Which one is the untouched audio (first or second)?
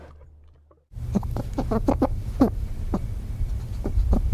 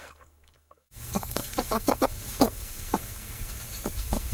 first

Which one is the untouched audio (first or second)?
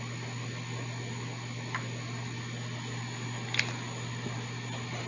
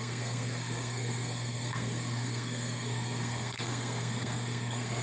first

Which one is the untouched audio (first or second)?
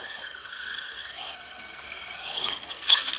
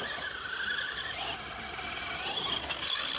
second